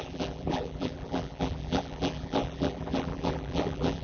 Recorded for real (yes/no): no